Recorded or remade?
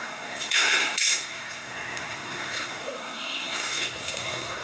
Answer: remade